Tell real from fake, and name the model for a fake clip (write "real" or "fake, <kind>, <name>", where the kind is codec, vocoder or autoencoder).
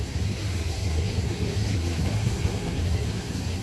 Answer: fake, codec, SNAC